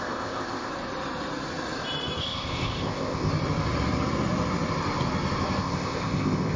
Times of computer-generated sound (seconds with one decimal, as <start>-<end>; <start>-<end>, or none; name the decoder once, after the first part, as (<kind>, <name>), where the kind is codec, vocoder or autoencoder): 0.0-0.7 (codec, ZipCodec); 2.2-3.3; 5.6-6.6